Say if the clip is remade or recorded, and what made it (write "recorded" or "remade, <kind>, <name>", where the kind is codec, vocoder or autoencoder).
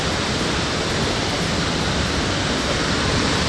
recorded